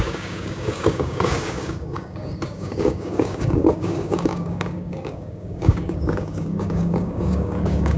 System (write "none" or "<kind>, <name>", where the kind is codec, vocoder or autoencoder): codec, DAC